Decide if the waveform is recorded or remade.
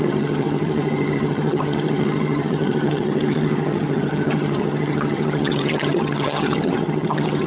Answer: remade